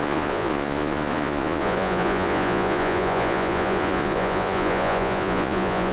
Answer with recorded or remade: remade